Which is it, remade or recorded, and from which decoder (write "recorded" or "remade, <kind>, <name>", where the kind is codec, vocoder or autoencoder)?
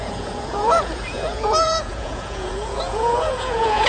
remade, vocoder, Vocos